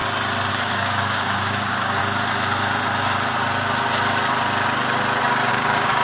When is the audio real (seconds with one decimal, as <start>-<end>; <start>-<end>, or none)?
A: 0.0-0.5; 2.0-5.5